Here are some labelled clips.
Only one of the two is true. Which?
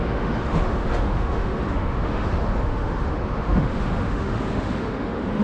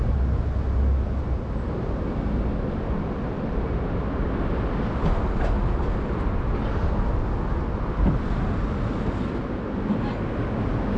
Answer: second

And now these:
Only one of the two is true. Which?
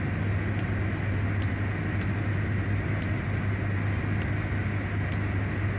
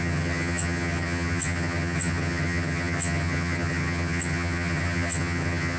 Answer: first